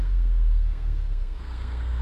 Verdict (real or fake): fake